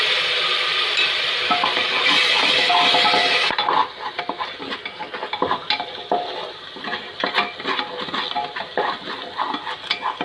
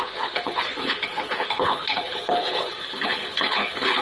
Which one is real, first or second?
first